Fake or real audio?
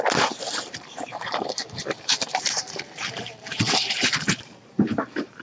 fake